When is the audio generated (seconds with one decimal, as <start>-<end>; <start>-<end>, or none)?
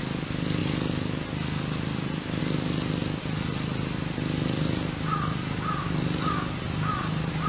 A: none